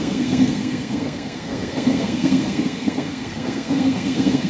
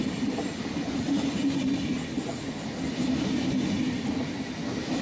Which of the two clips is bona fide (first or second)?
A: second